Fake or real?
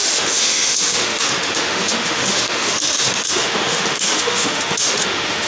fake